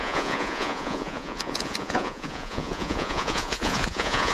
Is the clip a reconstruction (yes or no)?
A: yes